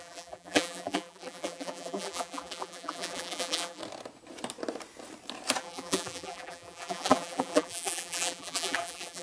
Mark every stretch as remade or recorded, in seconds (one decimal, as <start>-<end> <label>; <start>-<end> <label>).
0.0-3.8 remade; 3.8-5.6 recorded; 5.6-9.2 remade